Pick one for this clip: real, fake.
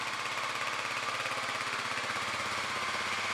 real